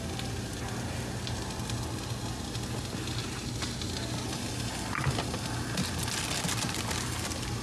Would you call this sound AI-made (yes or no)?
no